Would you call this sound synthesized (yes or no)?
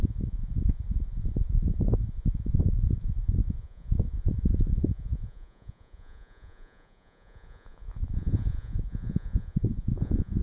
yes